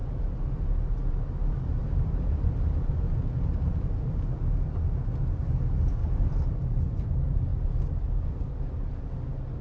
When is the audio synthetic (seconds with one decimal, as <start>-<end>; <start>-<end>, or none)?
0.0-4.3; 6.0-6.8